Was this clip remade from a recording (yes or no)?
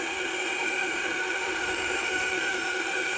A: yes